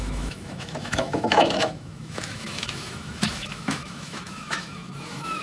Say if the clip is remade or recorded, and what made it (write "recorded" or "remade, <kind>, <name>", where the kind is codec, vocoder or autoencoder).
remade, autoencoder, DAC-VAE